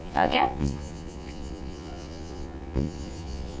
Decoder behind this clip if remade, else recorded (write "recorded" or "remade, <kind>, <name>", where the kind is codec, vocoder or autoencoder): remade, vocoder, Vocos